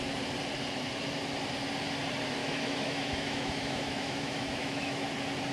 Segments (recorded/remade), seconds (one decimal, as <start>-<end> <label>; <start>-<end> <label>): 0.0-2.4 recorded; 2.4-5.1 remade; 5.1-5.5 recorded